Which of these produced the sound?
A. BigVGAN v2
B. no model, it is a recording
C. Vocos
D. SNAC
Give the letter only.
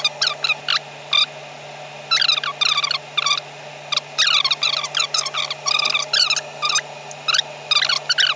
B